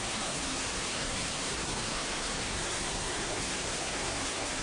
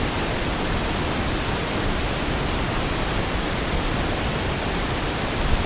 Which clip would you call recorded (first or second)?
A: second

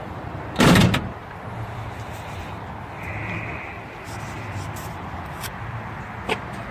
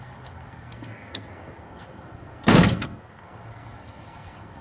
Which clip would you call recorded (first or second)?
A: first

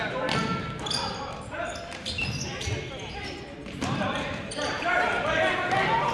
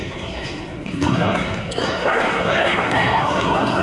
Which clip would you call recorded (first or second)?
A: first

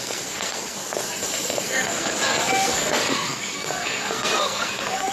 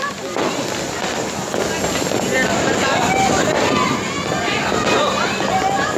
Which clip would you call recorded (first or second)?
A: second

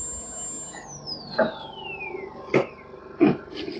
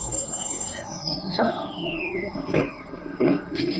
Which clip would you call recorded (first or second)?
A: first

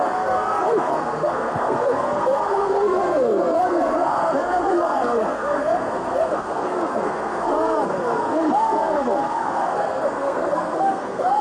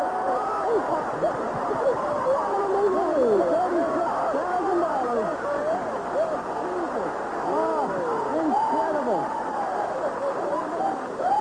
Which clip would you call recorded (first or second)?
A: second